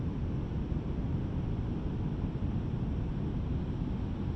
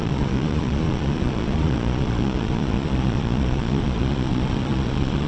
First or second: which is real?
first